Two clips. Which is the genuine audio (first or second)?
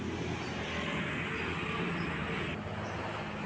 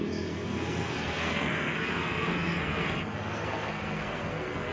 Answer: first